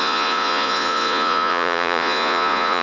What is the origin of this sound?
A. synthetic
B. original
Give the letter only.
A